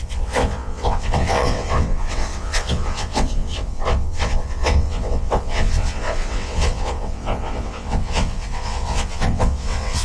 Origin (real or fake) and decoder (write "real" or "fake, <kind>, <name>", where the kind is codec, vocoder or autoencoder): fake, vocoder, WaveNeXt